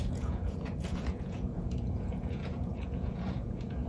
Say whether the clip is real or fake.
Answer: fake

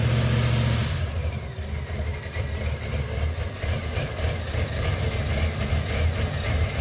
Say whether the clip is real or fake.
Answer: real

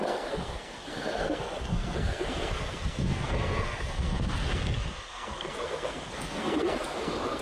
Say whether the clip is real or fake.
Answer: fake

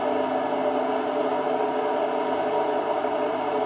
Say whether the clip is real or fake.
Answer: real